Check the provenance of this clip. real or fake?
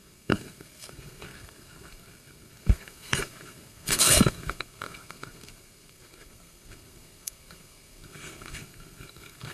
fake